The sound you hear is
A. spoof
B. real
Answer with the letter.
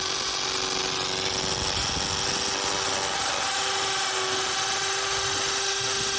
B